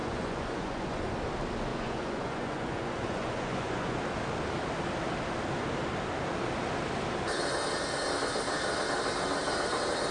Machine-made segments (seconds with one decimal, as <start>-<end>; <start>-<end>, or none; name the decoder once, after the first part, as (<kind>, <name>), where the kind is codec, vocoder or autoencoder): 0.0-1.1 (vocoder, Vocos); 1.7-4.0